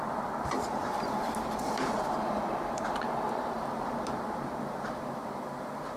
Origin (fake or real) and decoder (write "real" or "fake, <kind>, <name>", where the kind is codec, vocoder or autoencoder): fake, vocoder, BigVGAN v2